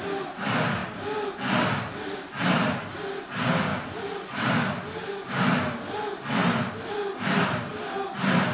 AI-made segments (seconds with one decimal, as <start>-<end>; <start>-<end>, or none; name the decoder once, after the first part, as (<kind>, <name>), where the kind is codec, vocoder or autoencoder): 0.0-0.8 (vocoder, BigVGAN v2); 1.9-3.7; 6.7-7.7